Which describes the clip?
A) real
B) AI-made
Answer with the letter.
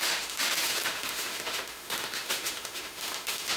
B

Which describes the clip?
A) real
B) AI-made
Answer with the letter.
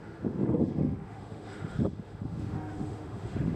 B